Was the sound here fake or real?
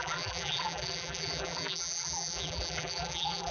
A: fake